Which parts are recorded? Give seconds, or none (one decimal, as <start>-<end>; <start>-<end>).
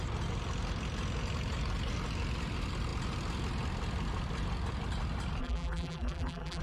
0.0-5.4